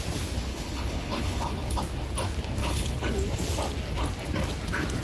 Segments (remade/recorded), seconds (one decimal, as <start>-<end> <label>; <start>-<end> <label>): 0.0-0.5 recorded; 0.5-1.8 remade; 1.8-2.6 recorded; 2.6-3.1 remade; 3.1-5.0 recorded

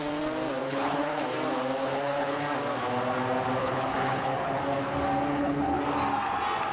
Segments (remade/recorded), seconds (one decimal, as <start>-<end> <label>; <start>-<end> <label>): 0.0-0.6 recorded; 0.6-1.2 remade; 1.2-1.8 recorded; 1.8-2.4 remade; 2.4-3.6 recorded; 3.6-4.6 remade; 4.6-5.3 recorded; 5.3-5.8 remade; 5.8-6.7 recorded

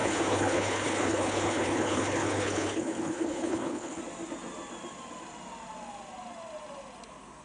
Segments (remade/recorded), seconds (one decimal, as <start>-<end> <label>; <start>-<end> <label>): 0.0-4.0 remade; 4.0-7.4 recorded

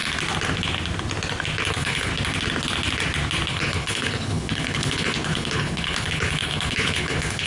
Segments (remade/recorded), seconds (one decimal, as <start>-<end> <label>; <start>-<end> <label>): 0.0-1.7 recorded; 1.7-2.1 remade; 2.1-3.5 recorded; 3.5-7.5 remade

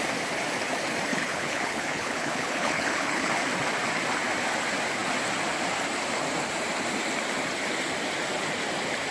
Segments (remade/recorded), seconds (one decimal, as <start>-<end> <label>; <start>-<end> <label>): 0.0-1.1 recorded; 1.1-3.3 remade; 3.3-9.1 recorded

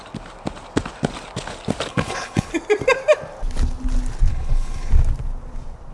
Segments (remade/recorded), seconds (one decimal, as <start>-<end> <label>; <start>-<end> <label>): 0.0-1.9 recorded; 1.9-2.5 remade; 2.5-4.3 recorded; 4.3-4.9 remade; 4.9-5.9 recorded